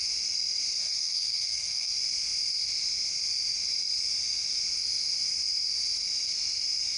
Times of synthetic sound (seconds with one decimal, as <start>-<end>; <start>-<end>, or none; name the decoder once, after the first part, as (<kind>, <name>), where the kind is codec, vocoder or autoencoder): 0.8-1.9 (codec, SNAC)